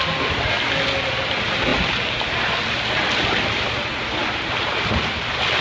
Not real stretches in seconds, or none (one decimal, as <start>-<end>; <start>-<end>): none